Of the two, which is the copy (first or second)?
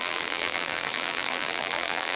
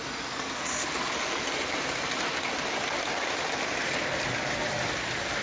first